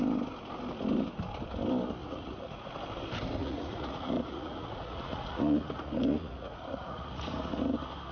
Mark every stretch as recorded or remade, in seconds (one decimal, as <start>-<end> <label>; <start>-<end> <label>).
0.0-2.0 recorded; 2.0-2.7 remade; 2.7-3.4 recorded; 3.4-7.6 remade; 7.6-8.1 recorded